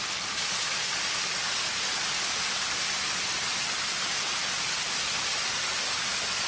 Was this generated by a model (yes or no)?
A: no